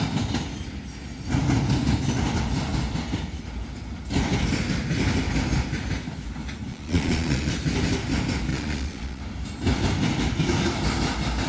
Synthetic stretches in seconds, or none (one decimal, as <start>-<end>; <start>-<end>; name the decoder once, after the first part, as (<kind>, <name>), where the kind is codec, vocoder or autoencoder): 6.7-7.5 (vocoder, Vocos); 8.5-9.2